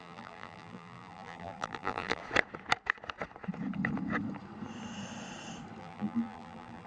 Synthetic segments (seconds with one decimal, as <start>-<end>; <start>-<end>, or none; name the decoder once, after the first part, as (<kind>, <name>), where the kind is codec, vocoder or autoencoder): 0.0-2.2 (vocoder, BigVGAN v2); 5.8-6.9